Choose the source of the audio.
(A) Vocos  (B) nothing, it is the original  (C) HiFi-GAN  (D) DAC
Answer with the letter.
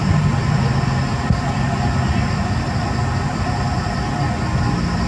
B